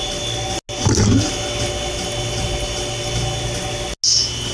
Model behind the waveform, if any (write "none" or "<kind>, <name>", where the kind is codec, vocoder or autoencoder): none